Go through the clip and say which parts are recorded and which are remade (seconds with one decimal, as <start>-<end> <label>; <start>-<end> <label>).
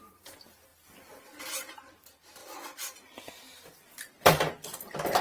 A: 0.0-0.7 remade; 0.7-1.6 recorded; 1.6-5.2 remade